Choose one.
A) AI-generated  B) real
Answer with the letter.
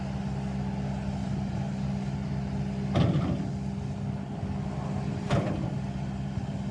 B